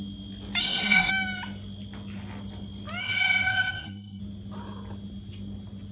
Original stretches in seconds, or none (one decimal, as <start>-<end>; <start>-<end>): 0.0-0.6; 1.1-3.0; 4.2-5.9